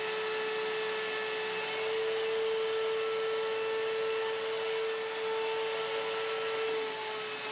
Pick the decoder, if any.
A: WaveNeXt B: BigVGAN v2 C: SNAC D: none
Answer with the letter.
D